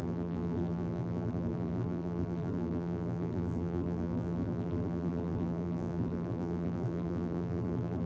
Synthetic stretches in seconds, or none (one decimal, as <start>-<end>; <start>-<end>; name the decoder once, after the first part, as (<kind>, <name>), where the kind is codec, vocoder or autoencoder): 0.0-8.1 (vocoder, BigVGAN v2)